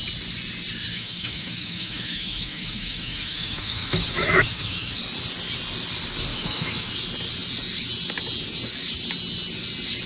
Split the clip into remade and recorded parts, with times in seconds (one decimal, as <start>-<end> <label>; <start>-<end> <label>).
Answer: 0.0-0.9 recorded; 0.9-5.0 remade; 5.0-6.3 recorded; 6.3-6.9 remade; 6.9-10.1 recorded